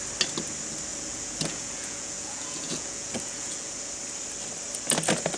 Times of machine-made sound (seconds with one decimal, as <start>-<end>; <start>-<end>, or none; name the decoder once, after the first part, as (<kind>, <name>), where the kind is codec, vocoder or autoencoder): 0.9-3.9 (vocoder, Vocos)